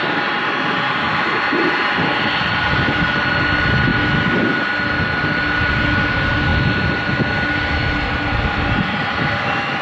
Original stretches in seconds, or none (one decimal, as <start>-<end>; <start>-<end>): 0.0-9.8